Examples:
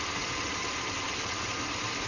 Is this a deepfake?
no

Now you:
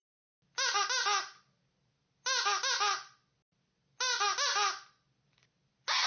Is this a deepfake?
no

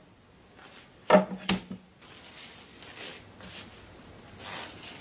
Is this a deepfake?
no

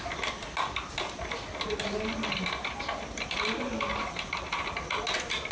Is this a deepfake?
no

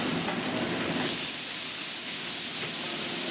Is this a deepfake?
no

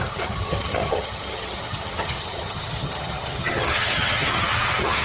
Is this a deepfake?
yes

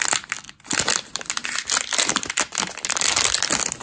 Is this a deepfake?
no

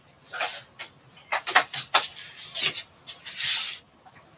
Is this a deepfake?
no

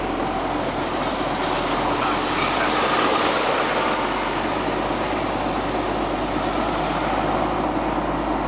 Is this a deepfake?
no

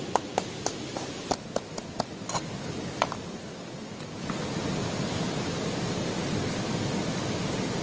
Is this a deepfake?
no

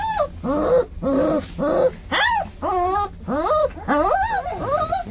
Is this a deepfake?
no